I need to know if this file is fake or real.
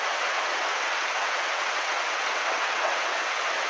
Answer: fake